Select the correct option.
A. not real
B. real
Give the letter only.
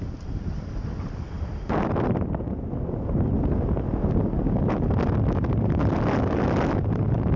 B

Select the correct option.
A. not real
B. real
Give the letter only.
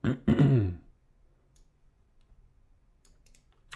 A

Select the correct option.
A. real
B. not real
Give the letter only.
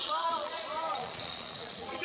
B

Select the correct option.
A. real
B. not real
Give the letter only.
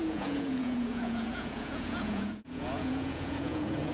B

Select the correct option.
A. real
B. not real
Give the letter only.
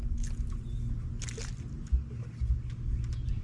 A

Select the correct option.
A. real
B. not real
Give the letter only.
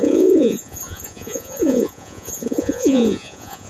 B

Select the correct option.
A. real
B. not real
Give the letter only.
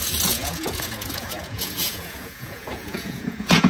B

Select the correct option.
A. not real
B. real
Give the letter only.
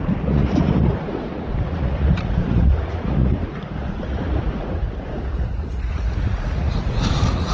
A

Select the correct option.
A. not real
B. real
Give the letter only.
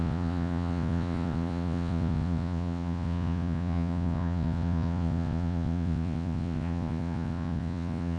A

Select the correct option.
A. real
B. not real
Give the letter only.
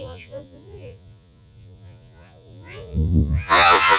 B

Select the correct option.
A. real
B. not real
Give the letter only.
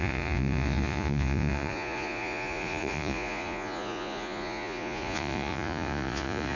B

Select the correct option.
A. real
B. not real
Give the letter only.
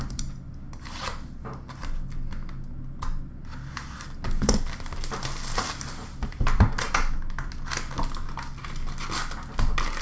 A